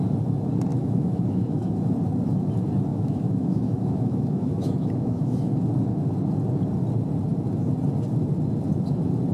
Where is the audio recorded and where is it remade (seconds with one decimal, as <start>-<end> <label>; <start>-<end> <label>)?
0.0-0.7 recorded; 0.7-1.8 remade; 1.8-2.9 recorded; 2.9-5.7 remade; 5.7-9.3 recorded